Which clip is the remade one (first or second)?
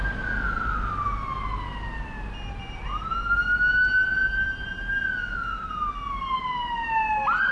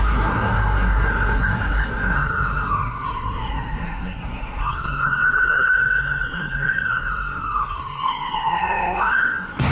second